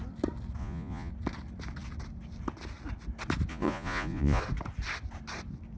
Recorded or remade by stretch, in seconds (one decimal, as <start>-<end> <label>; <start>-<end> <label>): 0.0-0.6 recorded; 0.6-1.1 remade; 1.1-3.5 recorded; 3.5-4.4 remade; 4.4-5.8 recorded